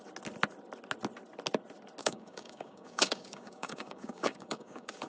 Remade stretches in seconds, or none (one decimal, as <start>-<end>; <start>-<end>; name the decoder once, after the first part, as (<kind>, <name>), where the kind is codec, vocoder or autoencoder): 2.0-5.1 (codec, DAC)